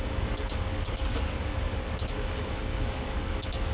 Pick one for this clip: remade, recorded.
remade